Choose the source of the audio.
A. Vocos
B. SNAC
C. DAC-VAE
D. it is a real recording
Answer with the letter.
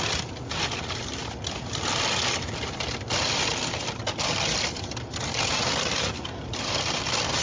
D